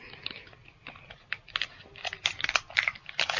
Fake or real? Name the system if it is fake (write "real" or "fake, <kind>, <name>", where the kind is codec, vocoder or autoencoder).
real